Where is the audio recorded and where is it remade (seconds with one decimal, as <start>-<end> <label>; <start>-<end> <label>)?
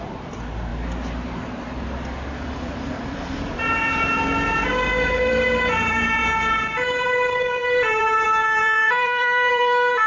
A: 0.0-0.7 remade; 0.7-2.3 recorded; 2.3-6.2 remade; 6.2-7.0 recorded; 7.0-10.1 remade